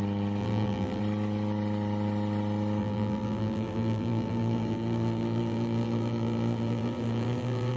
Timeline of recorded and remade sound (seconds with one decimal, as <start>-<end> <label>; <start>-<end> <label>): 0.0-0.4 recorded; 0.4-1.0 remade; 1.0-2.8 recorded; 2.8-7.8 remade